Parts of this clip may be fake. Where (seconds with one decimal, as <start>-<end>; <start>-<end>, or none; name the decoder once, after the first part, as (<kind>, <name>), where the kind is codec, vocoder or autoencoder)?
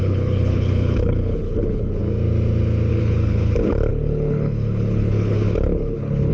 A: 0.0-2.0 (codec, HILCodec); 2.9-6.3